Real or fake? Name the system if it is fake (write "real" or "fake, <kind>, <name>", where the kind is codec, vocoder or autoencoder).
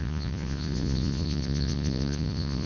fake, vocoder, Vocos